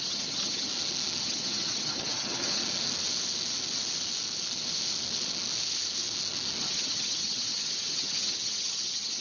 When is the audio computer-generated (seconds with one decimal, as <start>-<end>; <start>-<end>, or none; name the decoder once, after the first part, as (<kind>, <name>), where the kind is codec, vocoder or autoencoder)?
0.0-0.7 (vocoder, HiFi-GAN); 1.2-2.6; 6.6-9.2